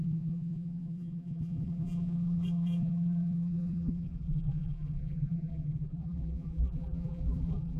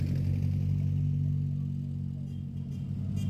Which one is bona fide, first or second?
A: second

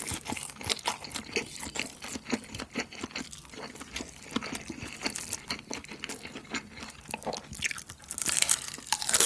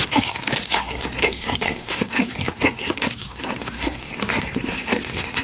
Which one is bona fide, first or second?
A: first